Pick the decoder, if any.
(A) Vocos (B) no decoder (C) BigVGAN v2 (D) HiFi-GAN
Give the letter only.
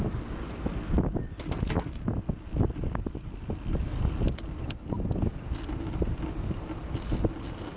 B